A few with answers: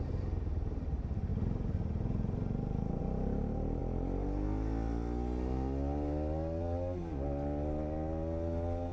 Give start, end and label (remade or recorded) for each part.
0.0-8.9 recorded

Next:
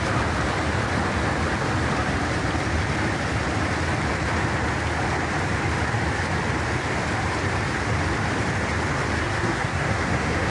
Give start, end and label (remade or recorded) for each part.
0.0-9.2 recorded; 9.2-10.5 remade

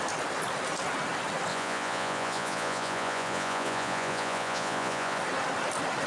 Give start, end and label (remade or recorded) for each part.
0.0-1.5 recorded; 1.5-5.2 remade; 5.2-6.1 recorded

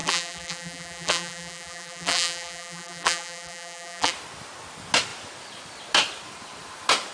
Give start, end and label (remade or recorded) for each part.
0.0-4.1 remade; 4.1-7.1 recorded